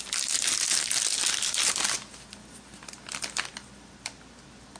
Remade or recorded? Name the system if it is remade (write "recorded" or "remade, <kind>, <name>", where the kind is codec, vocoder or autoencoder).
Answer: recorded